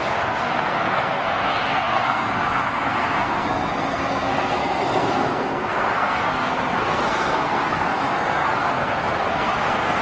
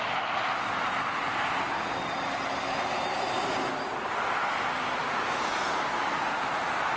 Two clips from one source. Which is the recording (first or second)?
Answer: second